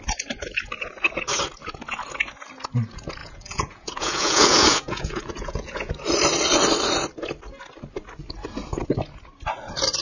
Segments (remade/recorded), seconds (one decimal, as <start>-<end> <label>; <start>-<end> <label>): 0.0-3.2 recorded; 3.2-5.9 remade; 5.9-10.0 recorded